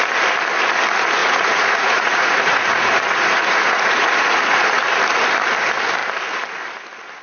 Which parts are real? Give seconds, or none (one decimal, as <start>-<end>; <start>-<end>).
0.0-1.2; 4.8-7.2